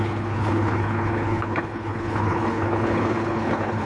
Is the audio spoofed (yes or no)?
yes